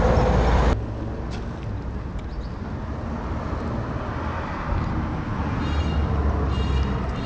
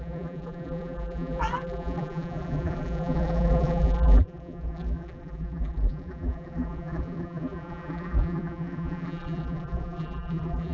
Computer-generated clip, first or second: second